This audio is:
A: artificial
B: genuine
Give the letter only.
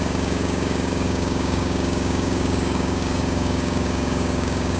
A